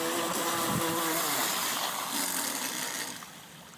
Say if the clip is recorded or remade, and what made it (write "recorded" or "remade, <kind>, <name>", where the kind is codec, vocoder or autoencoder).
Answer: recorded